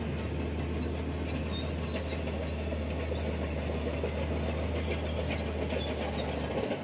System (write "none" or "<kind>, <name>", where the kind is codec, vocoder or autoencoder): none